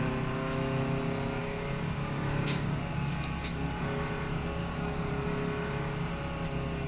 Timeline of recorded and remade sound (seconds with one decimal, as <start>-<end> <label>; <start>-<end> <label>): 0.0-1.4 recorded; 1.4-3.1 remade; 3.1-4.6 recorded; 4.6-5.1 remade; 5.1-6.9 recorded